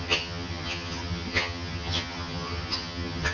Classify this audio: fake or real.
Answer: fake